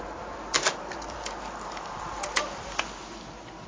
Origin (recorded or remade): recorded